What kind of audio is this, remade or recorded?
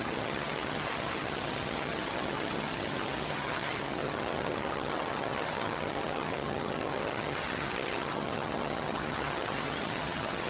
remade